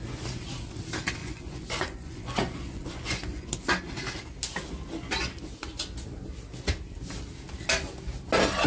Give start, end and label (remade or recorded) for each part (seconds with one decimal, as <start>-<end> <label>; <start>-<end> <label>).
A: 0.0-1.2 recorded; 1.2-3.5 remade; 3.5-8.7 recorded